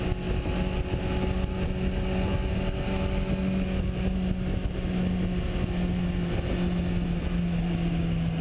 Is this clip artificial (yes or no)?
no